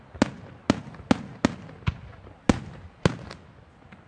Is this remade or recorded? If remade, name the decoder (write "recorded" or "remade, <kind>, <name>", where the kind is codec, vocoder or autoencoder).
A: recorded